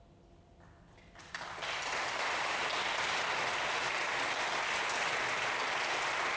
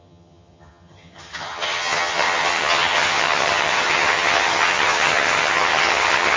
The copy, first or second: second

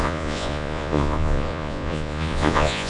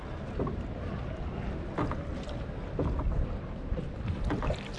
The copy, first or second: first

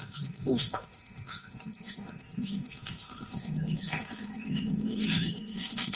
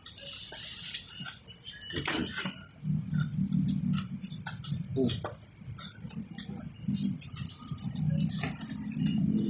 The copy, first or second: first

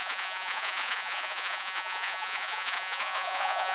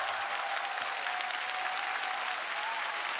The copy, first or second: first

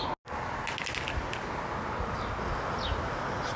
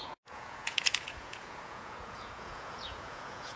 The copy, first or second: second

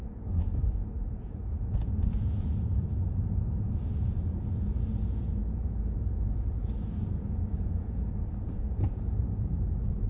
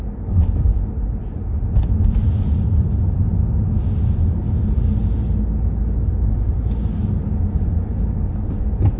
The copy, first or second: first